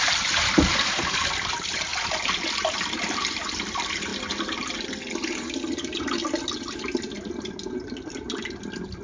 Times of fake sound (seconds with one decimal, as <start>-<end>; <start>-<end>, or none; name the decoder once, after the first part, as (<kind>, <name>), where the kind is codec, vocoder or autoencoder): 0.0-1.9 (vocoder, BigVGAN v2); 2.7-4.1; 7.8-9.0